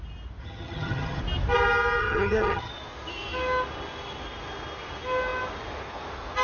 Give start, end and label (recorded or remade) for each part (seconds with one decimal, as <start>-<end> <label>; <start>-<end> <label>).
0.0-0.4 recorded; 0.4-1.2 remade; 1.2-2.0 recorded; 2.0-2.7 remade; 2.7-6.4 recorded